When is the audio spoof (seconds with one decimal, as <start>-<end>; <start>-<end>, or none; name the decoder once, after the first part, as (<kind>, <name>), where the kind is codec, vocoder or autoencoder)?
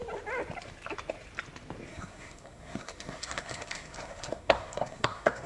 1.9-5.5 (codec, SNAC)